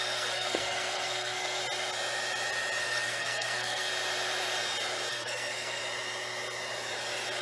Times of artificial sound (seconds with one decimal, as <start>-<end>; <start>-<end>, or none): 0.0-1.6; 2.8-3.9; 5.1-5.8